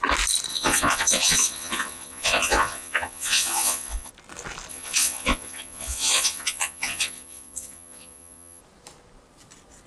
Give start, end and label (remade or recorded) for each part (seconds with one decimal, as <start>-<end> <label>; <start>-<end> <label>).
0.0-0.5 recorded; 0.5-4.1 remade; 4.1-4.7 recorded; 4.7-8.6 remade; 8.6-9.9 recorded